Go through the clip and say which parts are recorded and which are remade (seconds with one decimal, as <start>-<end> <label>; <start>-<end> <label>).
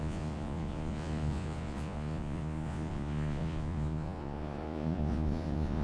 0.0-5.8 remade